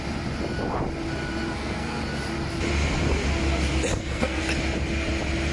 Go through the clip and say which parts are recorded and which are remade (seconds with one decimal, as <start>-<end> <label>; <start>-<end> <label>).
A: 0.0-1.5 recorded; 1.5-2.0 remade; 2.0-3.9 recorded; 3.9-4.4 remade; 4.4-5.5 recorded